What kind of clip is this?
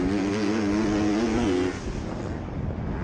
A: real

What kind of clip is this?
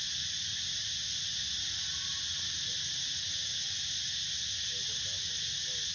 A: real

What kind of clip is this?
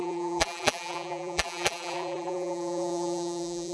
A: fake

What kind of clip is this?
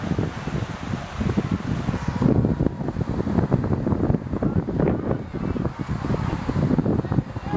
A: real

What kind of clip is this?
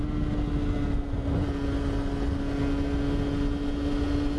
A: real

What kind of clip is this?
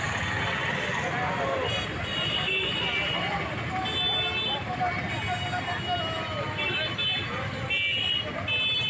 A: real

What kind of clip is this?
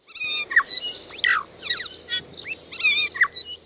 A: real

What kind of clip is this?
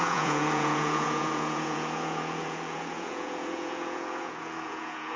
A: fake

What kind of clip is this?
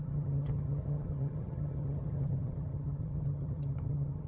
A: fake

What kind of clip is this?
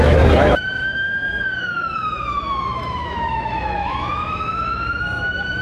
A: fake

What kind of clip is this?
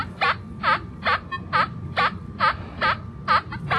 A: real